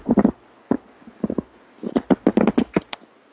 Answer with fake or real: real